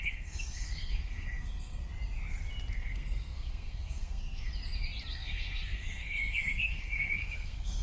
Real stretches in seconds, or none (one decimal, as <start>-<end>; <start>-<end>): 1.9-2.7; 4.5-5.1